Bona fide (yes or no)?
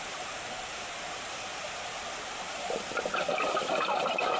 yes